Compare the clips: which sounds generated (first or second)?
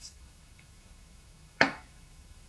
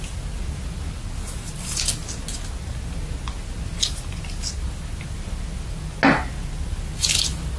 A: first